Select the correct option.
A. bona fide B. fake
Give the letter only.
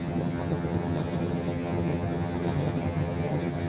B